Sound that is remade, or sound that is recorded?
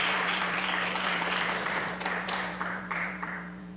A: remade